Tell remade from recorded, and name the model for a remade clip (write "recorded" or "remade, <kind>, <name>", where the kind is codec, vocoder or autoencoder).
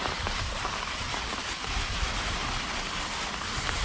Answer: recorded